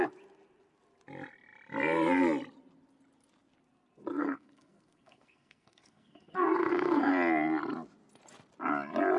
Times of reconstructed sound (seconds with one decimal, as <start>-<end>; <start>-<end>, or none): 4.1-7.1